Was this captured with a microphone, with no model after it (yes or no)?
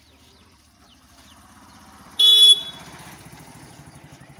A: no